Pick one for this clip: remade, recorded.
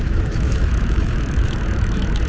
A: remade